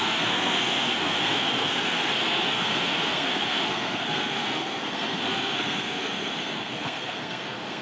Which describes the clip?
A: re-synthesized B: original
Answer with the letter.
A